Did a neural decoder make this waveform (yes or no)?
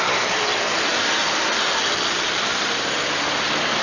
yes